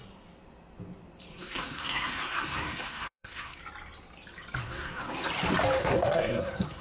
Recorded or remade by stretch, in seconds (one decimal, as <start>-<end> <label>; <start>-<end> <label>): 0.0-1.3 recorded; 1.3-3.6 remade; 3.6-4.6 recorded; 4.6-5.3 remade; 5.3-5.8 recorded; 5.8-6.8 remade